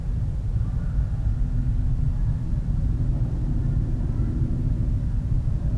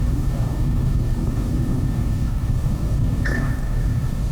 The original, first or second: first